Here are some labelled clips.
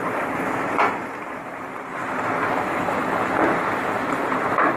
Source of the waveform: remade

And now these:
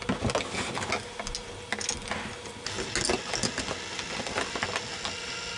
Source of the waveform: recorded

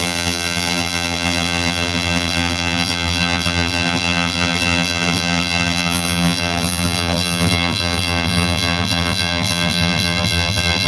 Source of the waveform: remade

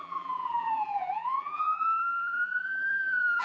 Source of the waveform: remade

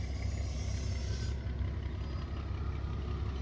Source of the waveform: recorded